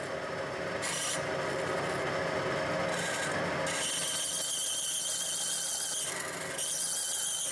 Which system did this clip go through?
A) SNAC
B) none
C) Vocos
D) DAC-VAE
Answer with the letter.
B